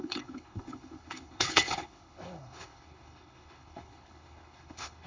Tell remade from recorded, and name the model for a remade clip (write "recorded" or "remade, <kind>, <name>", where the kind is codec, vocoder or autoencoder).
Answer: remade, codec, HILCodec